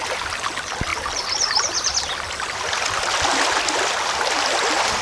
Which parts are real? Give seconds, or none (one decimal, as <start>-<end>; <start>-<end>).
0.0-5.0